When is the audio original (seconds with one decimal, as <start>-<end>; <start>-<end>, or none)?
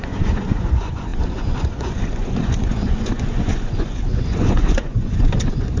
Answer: none